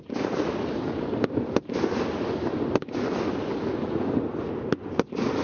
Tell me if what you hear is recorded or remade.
recorded